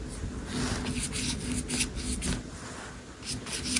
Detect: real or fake real